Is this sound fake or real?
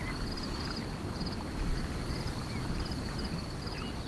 real